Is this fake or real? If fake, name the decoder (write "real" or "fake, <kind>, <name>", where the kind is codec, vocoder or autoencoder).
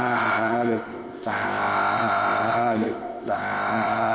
fake, codec, ZipCodec